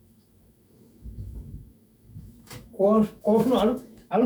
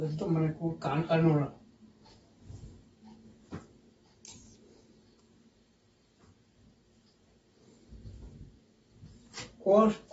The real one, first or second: second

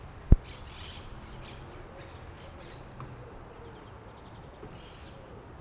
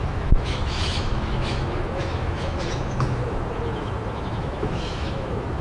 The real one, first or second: first